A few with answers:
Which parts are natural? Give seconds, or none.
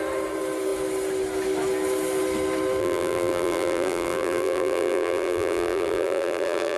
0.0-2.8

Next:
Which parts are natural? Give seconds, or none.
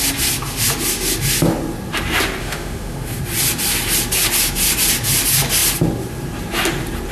0.0-2.4; 3.2-7.1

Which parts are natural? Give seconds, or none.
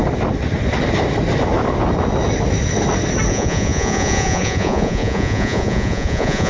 0.0-3.3